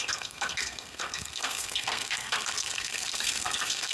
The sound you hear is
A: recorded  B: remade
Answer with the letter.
B